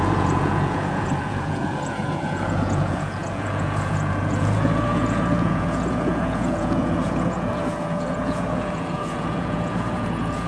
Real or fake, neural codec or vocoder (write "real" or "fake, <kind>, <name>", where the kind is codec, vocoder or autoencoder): fake, vocoder, Vocos